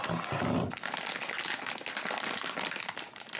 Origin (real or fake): real